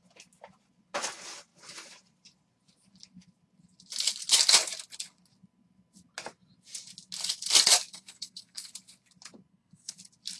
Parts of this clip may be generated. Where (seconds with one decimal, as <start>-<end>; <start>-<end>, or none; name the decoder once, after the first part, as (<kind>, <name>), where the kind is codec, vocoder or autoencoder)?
7.9-8.7 (codec, SNAC); 9.5-10.0

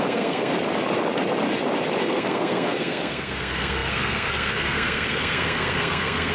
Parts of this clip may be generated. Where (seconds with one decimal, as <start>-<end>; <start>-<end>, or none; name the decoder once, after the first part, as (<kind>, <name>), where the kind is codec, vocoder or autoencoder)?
0.0-0.5 (codec, SNAC); 2.0-6.3

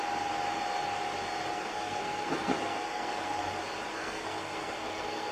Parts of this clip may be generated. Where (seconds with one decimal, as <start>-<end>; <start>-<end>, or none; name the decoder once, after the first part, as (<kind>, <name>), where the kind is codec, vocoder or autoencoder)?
1.5-3.5 (codec, SNAC); 3.9-5.3

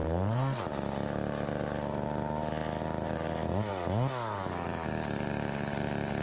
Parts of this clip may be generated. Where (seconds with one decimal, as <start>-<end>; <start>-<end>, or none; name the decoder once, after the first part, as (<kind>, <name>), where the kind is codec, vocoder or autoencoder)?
0.0-0.6 (codec, SNAC)

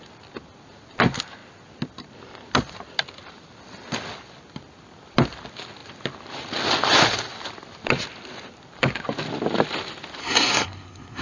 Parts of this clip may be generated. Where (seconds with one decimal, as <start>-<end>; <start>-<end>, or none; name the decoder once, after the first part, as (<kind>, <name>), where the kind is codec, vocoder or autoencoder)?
10.2-11.2 (codec, SNAC)